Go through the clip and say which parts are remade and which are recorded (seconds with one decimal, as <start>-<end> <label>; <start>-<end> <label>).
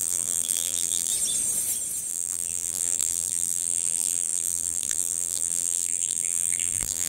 0.0-1.1 remade; 1.1-2.1 recorded; 2.1-7.1 remade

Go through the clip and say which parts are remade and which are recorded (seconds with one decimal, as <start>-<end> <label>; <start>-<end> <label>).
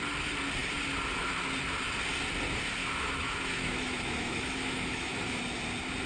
0.0-2.8 recorded; 2.8-5.4 remade; 5.4-6.1 recorded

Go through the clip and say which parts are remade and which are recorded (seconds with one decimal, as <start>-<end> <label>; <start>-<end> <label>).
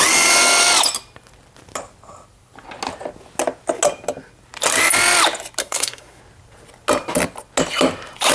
0.0-5.6 recorded; 5.6-6.2 remade; 6.2-8.3 recorded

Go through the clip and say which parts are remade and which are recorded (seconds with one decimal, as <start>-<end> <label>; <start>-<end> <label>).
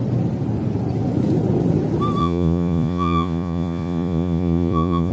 0.0-2.2 recorded; 2.2-5.1 remade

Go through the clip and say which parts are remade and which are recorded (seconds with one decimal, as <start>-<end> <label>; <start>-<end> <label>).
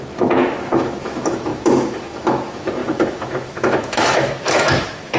0.0-5.2 remade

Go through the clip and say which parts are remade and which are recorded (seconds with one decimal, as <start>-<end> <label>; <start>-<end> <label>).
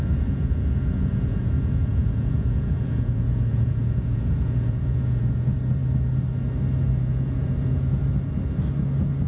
0.0-5.8 remade; 5.8-6.9 recorded; 6.9-8.0 remade; 8.0-9.3 recorded